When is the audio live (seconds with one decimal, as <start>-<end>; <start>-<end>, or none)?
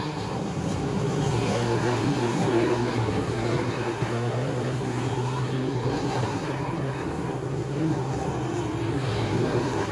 8.3-8.9